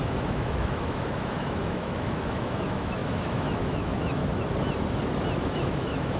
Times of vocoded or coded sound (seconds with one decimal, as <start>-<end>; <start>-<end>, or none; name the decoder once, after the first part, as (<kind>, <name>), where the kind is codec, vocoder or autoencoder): 0.0-4.2 (autoencoder, DAC-VAE); 5.4-6.2